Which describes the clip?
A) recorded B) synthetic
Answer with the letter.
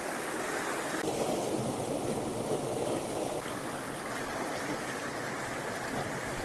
A